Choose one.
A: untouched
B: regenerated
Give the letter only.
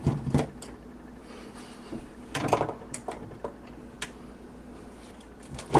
A